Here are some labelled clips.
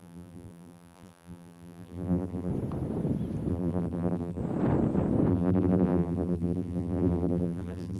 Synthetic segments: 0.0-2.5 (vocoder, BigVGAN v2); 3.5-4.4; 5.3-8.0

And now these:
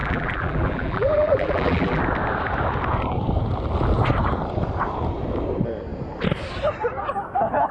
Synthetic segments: 0.0-2.0 (vocoder, BigVGAN v2)